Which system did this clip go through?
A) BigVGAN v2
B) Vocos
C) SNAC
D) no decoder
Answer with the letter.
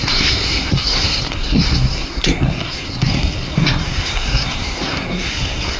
C